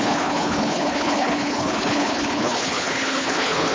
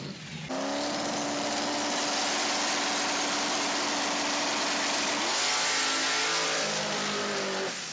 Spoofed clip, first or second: first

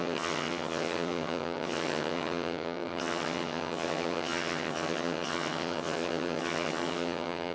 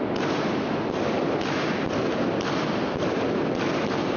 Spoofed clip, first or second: first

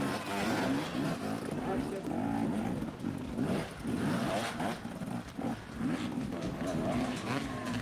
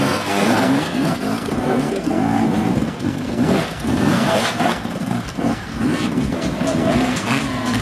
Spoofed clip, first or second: second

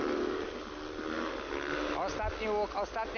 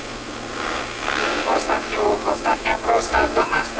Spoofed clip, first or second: second